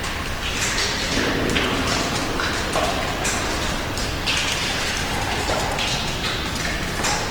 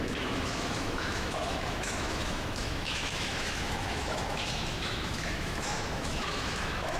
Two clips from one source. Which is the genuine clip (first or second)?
first